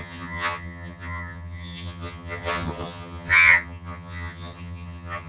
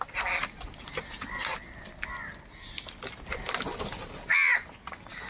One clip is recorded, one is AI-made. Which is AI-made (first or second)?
first